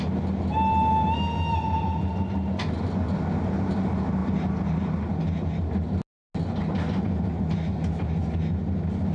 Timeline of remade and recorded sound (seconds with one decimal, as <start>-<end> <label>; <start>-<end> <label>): 0.0-9.1 recorded